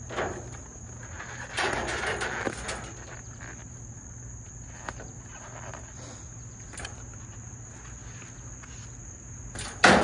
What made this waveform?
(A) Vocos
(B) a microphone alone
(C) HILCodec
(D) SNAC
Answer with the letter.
B